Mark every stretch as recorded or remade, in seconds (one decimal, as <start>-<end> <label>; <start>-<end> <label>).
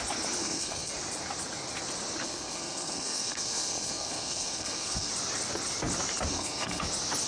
0.0-0.4 recorded; 0.4-0.9 remade; 0.9-2.2 recorded; 2.2-5.1 remade; 5.1-6.3 recorded; 6.3-6.8 remade; 6.8-7.3 recorded